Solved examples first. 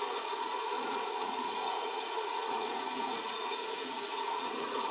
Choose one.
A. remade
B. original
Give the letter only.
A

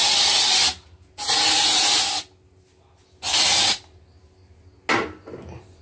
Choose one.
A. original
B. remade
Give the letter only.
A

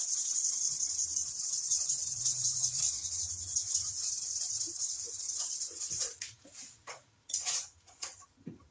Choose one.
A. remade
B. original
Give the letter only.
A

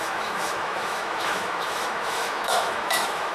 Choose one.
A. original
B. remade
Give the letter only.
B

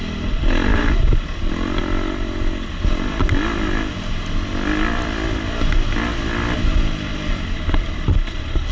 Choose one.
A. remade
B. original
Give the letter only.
B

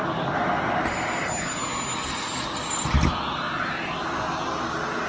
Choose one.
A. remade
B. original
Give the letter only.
B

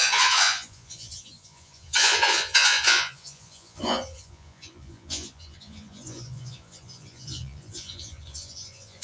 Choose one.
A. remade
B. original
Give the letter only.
A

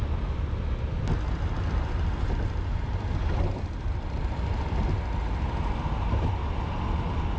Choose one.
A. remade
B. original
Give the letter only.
B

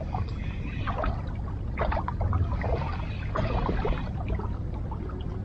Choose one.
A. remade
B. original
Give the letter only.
B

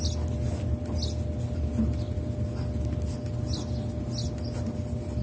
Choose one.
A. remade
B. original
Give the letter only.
B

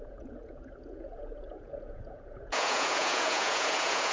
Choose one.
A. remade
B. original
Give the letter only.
A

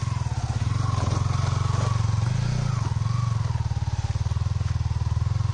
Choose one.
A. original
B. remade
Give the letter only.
A